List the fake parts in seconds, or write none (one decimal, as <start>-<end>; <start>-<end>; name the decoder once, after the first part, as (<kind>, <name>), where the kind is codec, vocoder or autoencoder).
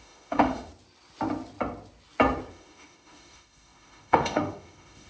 0.0-0.7 (autoencoder, DAC-VAE); 2.5-5.1